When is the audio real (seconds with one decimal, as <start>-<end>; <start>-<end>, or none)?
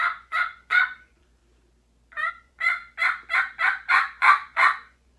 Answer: 1.4-2.3; 2.8-3.9